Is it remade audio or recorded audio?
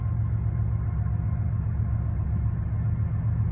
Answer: recorded